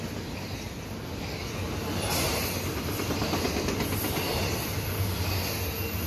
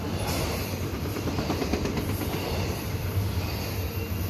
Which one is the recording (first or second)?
first